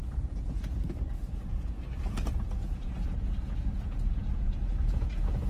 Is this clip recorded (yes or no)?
no